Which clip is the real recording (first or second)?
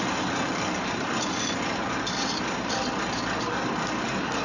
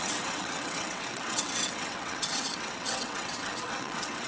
first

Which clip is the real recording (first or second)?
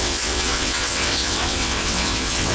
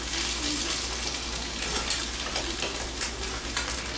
second